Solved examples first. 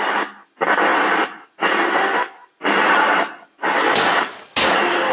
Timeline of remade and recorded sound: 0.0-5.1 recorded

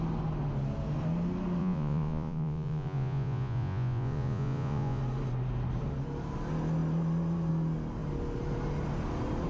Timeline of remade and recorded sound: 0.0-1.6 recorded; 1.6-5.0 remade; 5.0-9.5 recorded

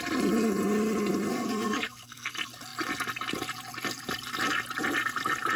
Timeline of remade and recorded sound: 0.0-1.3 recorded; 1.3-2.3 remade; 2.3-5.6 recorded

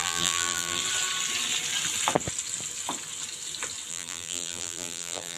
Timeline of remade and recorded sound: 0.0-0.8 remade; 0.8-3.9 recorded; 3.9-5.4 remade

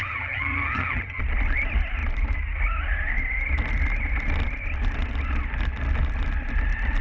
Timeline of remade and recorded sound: 0.0-1.2 remade; 1.2-7.0 recorded

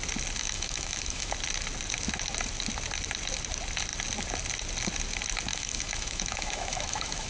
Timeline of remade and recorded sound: 0.0-0.4 recorded; 0.4-1.3 remade; 1.3-5.5 recorded; 5.5-7.3 remade